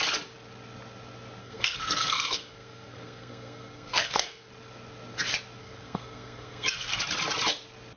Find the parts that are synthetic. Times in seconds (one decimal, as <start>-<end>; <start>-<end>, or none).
1.4-4.5; 5.6-7.0